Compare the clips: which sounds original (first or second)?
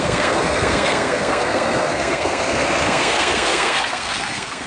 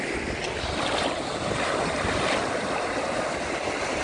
second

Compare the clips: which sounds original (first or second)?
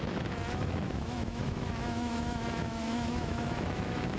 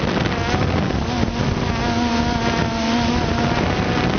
second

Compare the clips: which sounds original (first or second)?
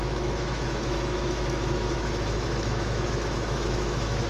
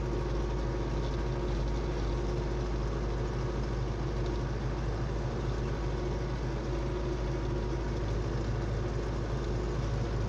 second